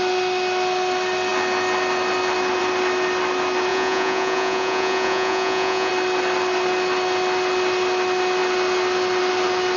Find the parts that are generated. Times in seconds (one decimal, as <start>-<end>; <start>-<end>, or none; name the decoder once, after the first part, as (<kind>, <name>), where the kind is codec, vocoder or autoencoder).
3.7-5.9 (vocoder, Vocos)